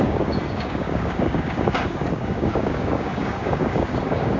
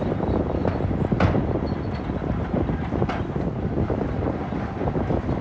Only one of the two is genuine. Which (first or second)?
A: second